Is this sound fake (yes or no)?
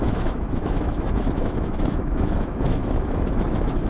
yes